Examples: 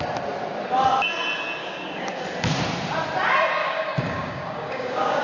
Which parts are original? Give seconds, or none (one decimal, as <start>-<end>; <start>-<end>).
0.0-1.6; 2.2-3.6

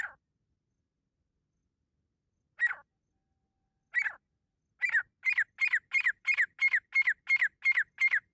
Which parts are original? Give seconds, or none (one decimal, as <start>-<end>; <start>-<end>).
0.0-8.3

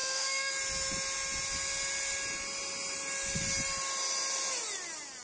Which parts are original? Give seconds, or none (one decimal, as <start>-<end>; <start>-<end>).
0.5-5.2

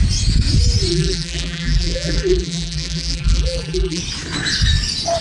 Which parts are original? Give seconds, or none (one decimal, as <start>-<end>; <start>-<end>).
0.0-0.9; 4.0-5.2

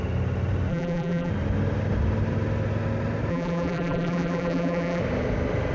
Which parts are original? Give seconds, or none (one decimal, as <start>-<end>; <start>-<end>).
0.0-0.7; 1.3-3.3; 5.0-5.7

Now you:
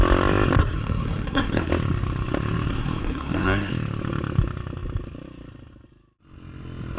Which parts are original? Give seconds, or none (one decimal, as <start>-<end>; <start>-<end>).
0.0-0.6; 1.7-2.7; 3.7-7.0